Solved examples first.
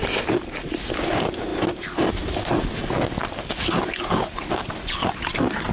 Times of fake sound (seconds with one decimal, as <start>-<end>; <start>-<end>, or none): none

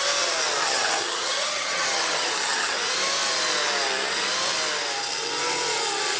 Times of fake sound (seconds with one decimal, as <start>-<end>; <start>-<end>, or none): 0.6-2.8

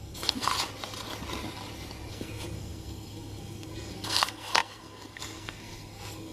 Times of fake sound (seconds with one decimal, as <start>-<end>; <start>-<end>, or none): 0.0-0.5; 2.1-6.3

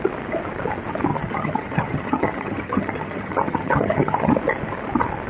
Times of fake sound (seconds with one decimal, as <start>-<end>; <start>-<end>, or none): 1.1-4.3